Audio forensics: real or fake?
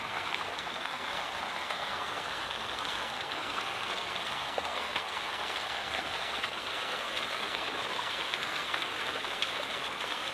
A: fake